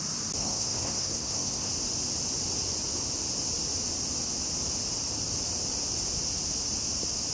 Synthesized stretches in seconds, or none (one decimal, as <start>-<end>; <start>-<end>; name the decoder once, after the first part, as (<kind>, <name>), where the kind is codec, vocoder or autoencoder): 0.4-1.7 (codec, SNAC)